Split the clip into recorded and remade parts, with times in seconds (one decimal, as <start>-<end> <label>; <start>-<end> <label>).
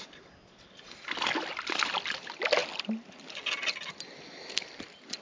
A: 0.0-5.2 recorded